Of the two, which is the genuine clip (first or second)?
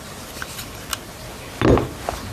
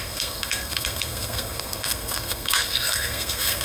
first